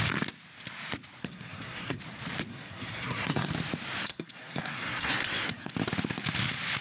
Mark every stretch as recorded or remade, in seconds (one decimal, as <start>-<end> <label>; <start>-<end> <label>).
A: 0.0-1.2 recorded; 1.2-2.0 remade; 2.0-2.5 recorded; 2.5-3.5 remade; 3.5-4.0 recorded; 4.0-5.7 remade; 5.7-6.8 recorded